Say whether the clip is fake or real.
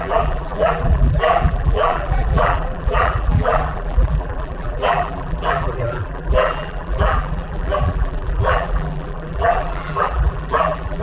fake